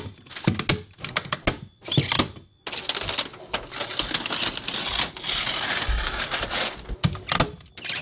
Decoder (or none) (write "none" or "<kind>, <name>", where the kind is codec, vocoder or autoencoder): none